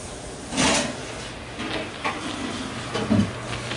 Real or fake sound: real